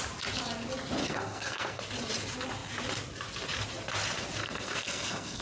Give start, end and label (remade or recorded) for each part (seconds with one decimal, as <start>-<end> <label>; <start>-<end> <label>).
0.0-1.0 recorded; 1.0-1.8 remade; 1.8-4.4 recorded; 4.4-5.4 remade